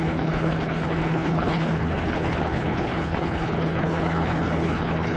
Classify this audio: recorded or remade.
remade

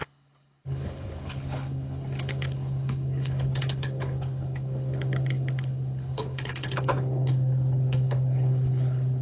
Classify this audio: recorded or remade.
remade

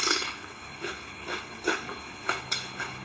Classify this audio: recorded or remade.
remade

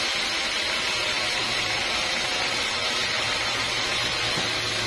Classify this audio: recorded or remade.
recorded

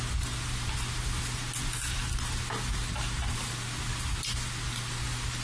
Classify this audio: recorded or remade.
recorded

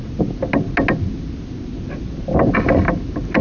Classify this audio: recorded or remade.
recorded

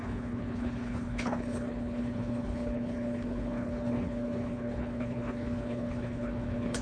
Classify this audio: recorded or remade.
remade